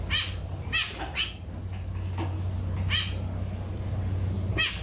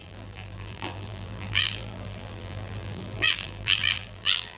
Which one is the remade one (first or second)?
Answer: second